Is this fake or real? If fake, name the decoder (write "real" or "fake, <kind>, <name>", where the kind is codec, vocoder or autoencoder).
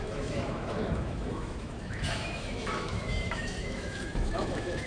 fake, autoencoder, DAC-VAE